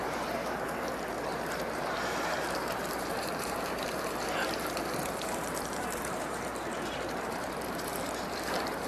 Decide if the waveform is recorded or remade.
remade